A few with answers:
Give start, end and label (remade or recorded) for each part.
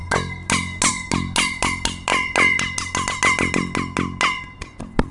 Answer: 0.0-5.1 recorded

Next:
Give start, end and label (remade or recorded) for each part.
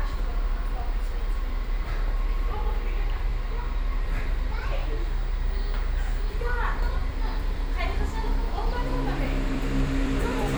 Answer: 0.0-3.3 remade; 3.3-3.9 recorded; 3.9-4.8 remade; 4.8-6.3 recorded; 6.3-10.6 remade